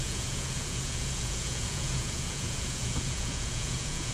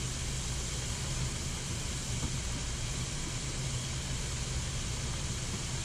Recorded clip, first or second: second